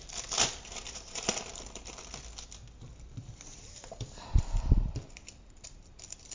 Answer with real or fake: fake